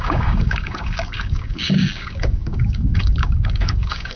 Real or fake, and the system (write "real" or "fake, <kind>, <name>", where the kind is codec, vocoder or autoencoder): fake, codec, DAC